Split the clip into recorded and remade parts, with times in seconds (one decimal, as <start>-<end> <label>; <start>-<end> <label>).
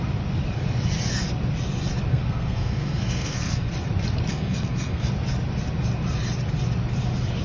0.0-2.1 recorded; 2.1-3.7 remade; 3.7-4.3 recorded; 4.3-5.1 remade; 5.1-7.4 recorded